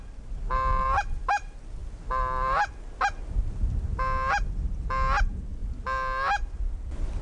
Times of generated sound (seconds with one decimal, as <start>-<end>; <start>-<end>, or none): none